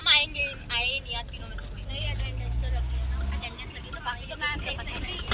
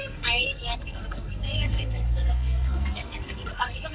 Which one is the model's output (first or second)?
second